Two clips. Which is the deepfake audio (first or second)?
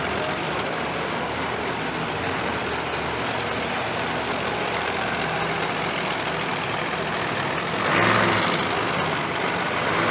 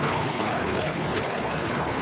second